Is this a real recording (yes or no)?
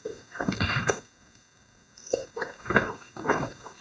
no